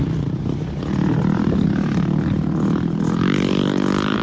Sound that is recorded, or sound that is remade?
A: recorded